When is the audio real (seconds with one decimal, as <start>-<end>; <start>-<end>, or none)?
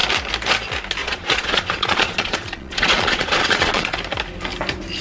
0.0-1.0; 4.0-5.0